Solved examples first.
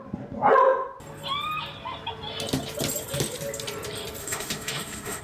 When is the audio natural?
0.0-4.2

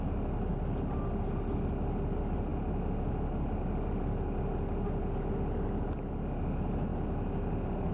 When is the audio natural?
0.0-7.9

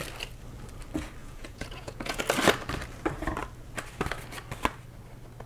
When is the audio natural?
0.0-1.2; 2.2-5.5

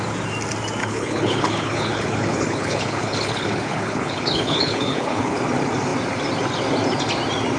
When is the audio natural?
0.0-0.8; 5.4-7.6

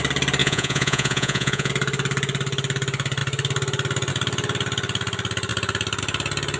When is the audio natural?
0.0-0.4; 1.7-6.6

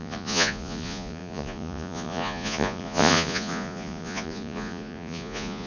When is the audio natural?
none

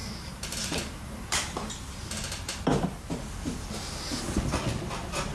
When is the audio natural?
1.7-5.3